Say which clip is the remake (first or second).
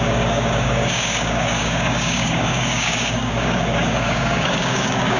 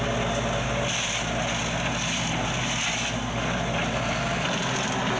first